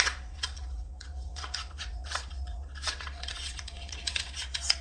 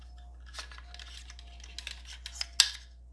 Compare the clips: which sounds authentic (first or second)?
second